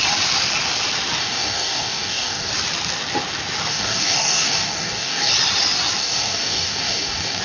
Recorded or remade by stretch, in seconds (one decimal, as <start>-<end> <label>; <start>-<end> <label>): 0.0-1.2 recorded; 1.2-2.5 remade; 2.5-3.7 recorded; 3.7-5.3 remade; 5.3-6.0 recorded; 6.0-7.4 remade